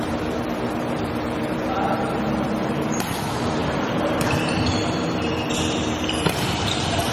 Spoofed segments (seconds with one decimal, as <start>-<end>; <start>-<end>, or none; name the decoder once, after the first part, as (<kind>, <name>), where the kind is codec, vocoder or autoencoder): 0.0-7.1 (vocoder, BigVGAN v2)